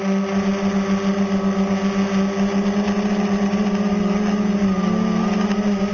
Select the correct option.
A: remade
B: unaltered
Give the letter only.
B